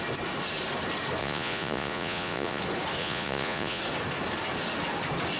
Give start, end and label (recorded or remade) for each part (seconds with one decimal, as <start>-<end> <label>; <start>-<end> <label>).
0.0-1.2 recorded; 1.2-2.6 remade; 2.6-3.0 recorded; 3.0-3.8 remade; 3.8-5.4 recorded